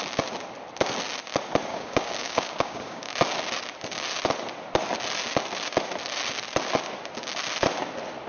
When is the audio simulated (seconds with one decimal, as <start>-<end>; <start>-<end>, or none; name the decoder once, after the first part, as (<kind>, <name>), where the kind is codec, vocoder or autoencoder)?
1.7-3.1 (codec, DAC)

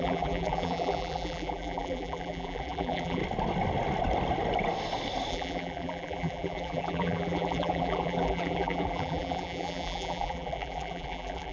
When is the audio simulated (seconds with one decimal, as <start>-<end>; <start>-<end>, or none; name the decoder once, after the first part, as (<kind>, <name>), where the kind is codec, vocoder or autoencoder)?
0.0-3.2 (vocoder, BigVGAN v2); 5.3-11.5

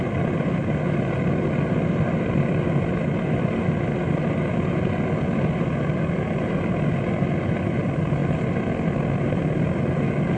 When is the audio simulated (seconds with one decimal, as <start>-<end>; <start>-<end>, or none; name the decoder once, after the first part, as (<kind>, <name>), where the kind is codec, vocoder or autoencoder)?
none

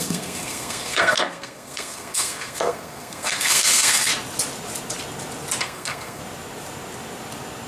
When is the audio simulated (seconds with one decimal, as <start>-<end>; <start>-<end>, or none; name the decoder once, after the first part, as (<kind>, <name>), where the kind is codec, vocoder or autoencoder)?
0.0-4.1 (codec, SNAC); 5.6-6.2

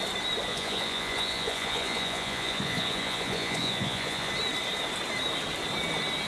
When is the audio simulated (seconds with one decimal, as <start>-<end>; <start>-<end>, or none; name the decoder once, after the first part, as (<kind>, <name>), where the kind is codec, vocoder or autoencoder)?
0.5-4.3 (vocoder, Vocos)

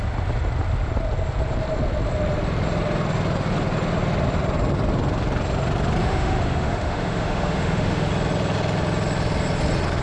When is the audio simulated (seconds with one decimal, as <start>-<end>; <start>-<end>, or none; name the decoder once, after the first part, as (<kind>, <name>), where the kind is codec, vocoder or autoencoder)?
6.0-8.1 (autoencoder, DAC-VAE)

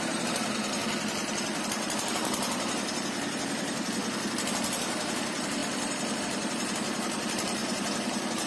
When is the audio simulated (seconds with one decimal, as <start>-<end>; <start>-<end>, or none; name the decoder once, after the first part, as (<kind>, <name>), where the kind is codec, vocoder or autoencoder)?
0.0-0.8 (vocoder, BigVGAN v2); 2.1-4.0; 4.5-5.6; 6.2-8.5